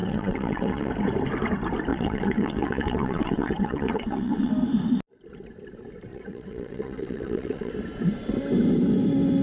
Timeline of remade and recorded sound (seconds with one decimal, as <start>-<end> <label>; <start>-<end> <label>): 0.0-0.9 remade; 0.9-1.9 recorded; 1.9-4.5 remade; 4.5-6.1 recorded; 6.1-7.7 remade; 7.7-9.4 recorded